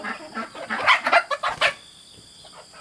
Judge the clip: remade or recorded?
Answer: recorded